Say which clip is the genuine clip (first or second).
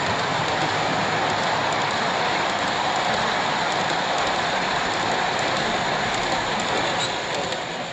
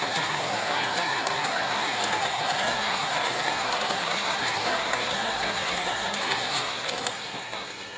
first